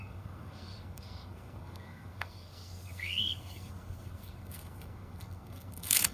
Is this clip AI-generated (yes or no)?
yes